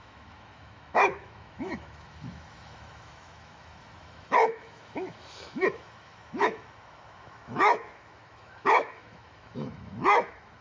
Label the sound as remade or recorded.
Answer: remade